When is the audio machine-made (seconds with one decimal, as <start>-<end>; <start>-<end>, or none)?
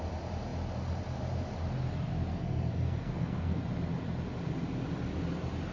2.3-3.6